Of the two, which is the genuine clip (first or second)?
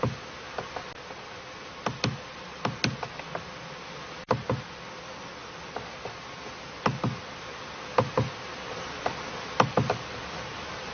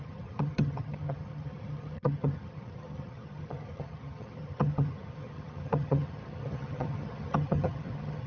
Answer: first